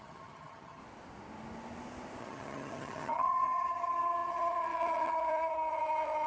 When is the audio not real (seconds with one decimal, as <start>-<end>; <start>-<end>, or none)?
0.0-0.8; 2.2-6.3